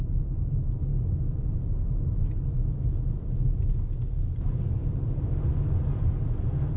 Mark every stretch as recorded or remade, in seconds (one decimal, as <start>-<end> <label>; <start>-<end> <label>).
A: 0.0-6.8 recorded